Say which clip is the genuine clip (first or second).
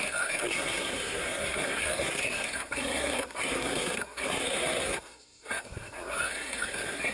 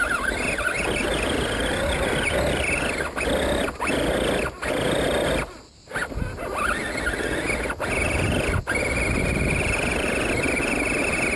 second